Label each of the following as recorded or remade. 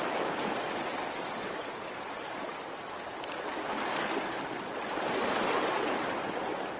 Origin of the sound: recorded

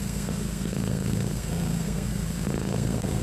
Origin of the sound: remade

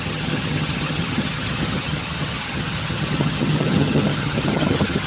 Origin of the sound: remade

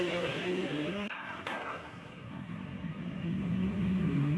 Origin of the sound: remade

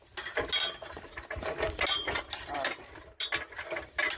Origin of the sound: recorded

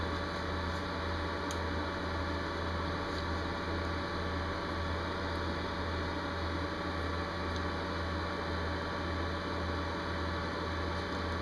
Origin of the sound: recorded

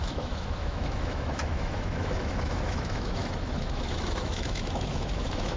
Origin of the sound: remade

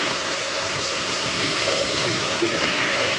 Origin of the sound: remade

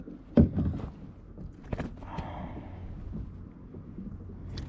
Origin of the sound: recorded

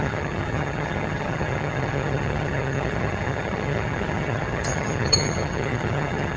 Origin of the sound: remade